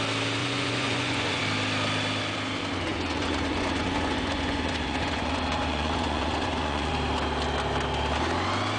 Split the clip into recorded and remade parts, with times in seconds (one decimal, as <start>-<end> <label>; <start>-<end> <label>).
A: 0.0-0.4 recorded; 0.4-1.4 remade; 1.4-2.9 recorded; 2.9-6.9 remade; 6.9-8.8 recorded

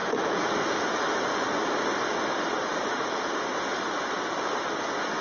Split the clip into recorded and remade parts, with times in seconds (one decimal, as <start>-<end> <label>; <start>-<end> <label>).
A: 0.0-0.6 remade; 0.6-2.7 recorded; 2.7-3.3 remade; 3.3-5.2 recorded

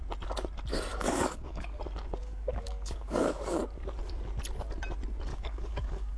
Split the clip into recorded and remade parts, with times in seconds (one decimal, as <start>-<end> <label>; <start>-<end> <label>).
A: 0.0-0.9 recorded; 0.9-1.8 remade; 1.8-2.2 recorded; 2.2-3.6 remade; 3.6-5.3 recorded; 5.3-6.2 remade